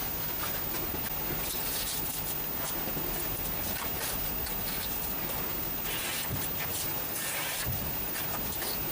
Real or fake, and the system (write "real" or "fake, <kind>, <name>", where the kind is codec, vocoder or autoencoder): real